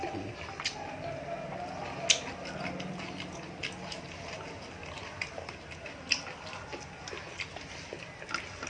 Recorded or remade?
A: recorded